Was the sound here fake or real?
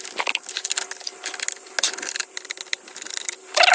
real